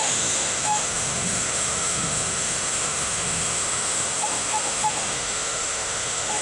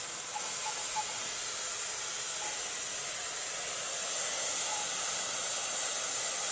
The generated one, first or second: first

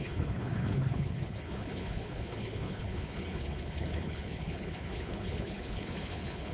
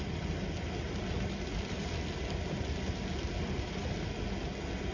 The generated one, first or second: first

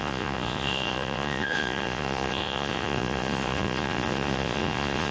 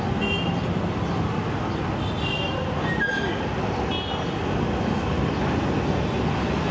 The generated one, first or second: first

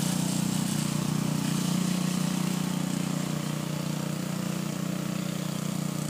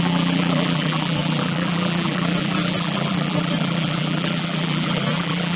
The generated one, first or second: second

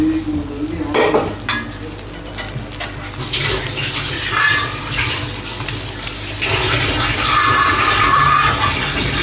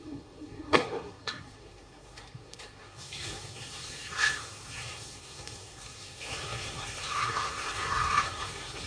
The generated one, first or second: second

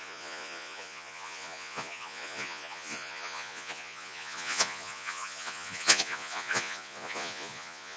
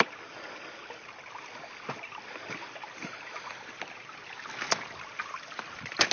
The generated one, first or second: first